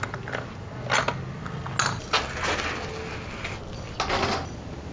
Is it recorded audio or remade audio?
recorded